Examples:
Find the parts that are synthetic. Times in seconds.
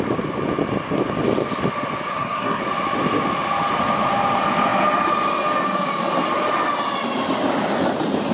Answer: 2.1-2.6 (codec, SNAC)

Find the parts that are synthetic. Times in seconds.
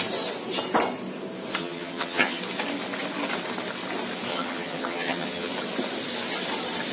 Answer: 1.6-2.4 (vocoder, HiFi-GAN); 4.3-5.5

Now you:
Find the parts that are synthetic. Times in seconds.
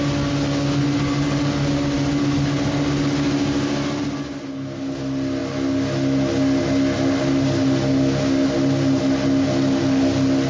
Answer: none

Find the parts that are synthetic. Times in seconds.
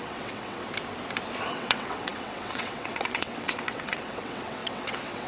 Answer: 0.0-0.6 (vocoder, WaveNeXt); 1.5-5.3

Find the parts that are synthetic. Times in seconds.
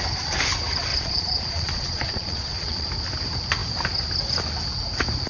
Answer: 0.9-2.9 (vocoder, Vocos)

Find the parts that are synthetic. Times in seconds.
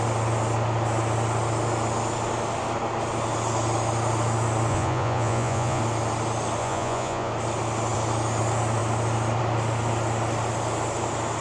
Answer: 4.7-5.8 (vocoder, Vocos); 6.6-7.3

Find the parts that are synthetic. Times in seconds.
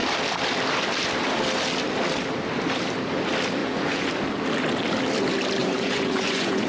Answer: 3.6-4.1 (vocoder, Vocos); 5.6-6.7